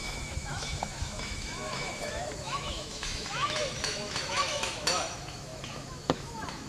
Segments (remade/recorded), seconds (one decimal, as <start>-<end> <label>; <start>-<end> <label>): 0.0-6.7 remade